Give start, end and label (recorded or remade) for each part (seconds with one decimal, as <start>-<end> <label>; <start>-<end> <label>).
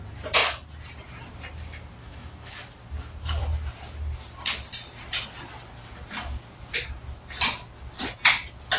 0.0-2.0 recorded; 2.0-2.5 remade; 2.5-8.8 recorded